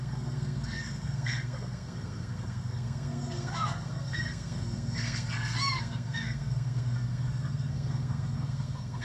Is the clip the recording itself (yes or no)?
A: no